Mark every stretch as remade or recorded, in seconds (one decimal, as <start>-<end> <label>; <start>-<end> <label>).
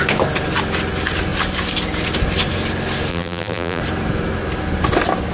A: 0.0-3.1 recorded; 3.1-3.8 remade; 3.8-5.3 recorded